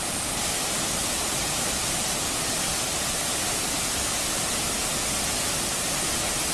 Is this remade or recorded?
recorded